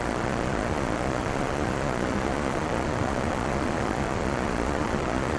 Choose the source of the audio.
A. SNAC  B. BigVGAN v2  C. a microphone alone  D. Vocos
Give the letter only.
D